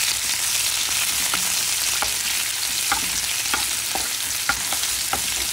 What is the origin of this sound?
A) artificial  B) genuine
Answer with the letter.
B